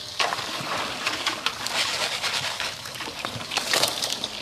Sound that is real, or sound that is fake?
fake